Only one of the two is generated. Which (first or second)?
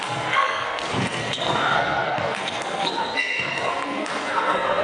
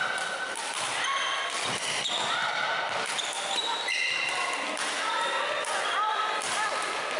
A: first